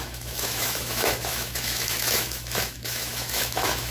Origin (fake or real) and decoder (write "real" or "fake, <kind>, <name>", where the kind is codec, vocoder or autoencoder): fake, autoencoder, DAC-VAE